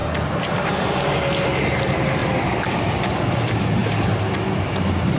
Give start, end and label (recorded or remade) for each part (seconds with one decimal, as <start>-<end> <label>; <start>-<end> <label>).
0.0-1.1 recorded; 1.1-2.2 remade; 2.2-2.9 recorded; 2.9-3.8 remade; 3.8-5.2 recorded